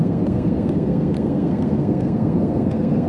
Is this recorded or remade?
remade